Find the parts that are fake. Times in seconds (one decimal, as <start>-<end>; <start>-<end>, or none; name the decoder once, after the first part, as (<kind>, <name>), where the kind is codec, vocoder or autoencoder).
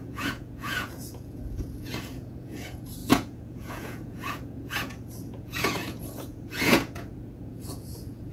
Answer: 0.0-8.3 (vocoder, Vocos)